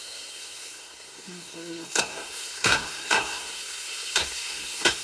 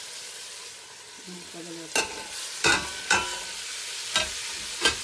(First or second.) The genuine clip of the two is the second